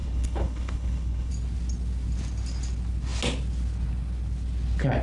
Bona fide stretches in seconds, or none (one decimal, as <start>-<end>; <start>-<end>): 1.3-5.0